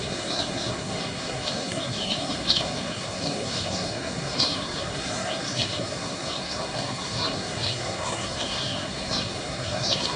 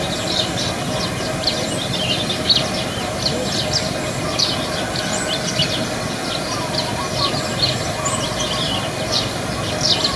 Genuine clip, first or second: second